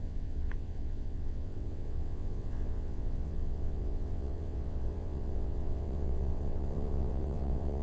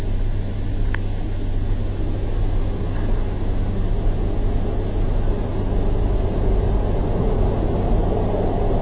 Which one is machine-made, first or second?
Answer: first